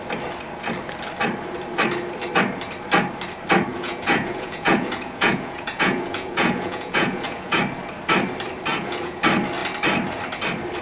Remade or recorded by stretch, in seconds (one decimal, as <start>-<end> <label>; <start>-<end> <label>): 0.0-3.7 recorded; 3.7-7.6 remade; 7.6-8.7 recorded; 8.7-9.2 remade; 9.2-10.8 recorded